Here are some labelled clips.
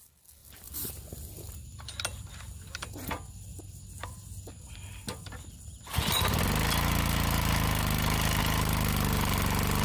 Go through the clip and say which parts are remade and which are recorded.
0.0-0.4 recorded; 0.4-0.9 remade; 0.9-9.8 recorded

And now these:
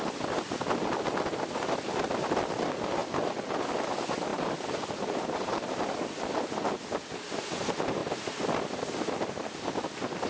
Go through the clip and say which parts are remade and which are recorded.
0.0-3.0 recorded; 3.0-3.9 remade; 3.9-4.3 recorded; 4.3-5.0 remade; 5.0-8.0 recorded; 8.0-9.0 remade; 9.0-10.3 recorded

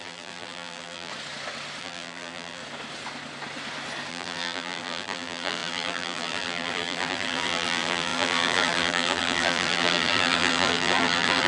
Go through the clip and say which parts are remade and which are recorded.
0.0-1.1 remade; 1.1-1.8 recorded; 1.8-2.6 remade; 2.6-4.1 recorded; 4.1-11.5 remade

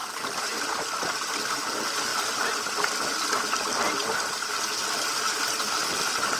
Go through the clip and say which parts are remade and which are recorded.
0.0-6.4 recorded

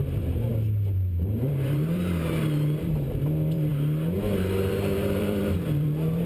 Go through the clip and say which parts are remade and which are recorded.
0.0-0.5 remade; 0.5-1.4 recorded; 1.4-3.7 remade; 3.7-4.7 recorded; 4.7-6.3 remade

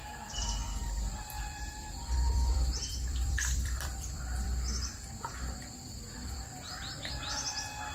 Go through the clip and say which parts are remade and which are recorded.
0.0-7.9 remade

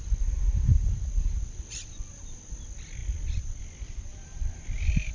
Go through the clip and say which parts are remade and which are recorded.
0.0-3.0 recorded; 3.0-3.6 remade; 3.6-4.1 recorded; 4.1-5.1 remade